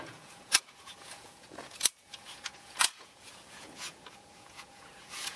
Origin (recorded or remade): remade